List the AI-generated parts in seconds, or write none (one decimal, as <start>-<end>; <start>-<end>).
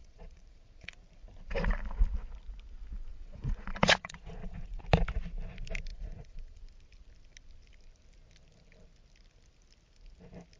0.0-0.9; 3.1-4.8; 5.9-6.6